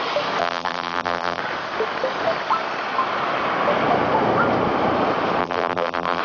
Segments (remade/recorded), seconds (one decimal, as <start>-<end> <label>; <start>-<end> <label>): 0.0-0.4 recorded; 0.4-1.4 remade; 1.4-5.4 recorded; 5.4-6.2 remade

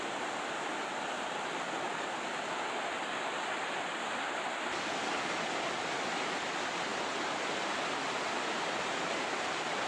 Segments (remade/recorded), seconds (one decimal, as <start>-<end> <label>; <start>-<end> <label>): 0.0-9.9 recorded

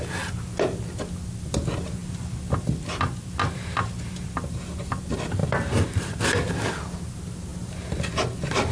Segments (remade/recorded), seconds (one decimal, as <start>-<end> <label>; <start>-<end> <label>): 0.0-2.0 recorded; 2.0-5.0 remade; 5.0-5.4 recorded; 5.4-6.5 remade; 6.5-7.5 recorded; 7.5-8.1 remade; 8.1-8.7 recorded